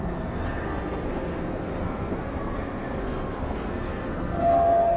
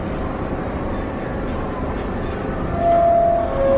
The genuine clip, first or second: second